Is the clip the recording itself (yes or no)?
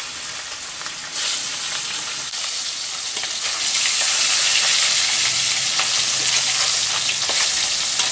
yes